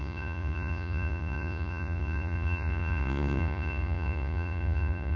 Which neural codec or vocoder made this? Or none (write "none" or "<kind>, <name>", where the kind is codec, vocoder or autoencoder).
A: vocoder, Vocos